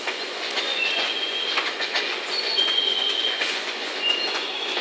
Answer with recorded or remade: remade